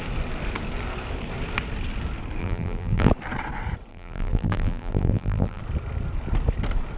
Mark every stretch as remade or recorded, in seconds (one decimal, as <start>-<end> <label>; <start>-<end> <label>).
0.0-2.4 recorded; 2.4-3.1 remade; 3.1-3.9 recorded; 3.9-5.6 remade; 5.6-7.0 recorded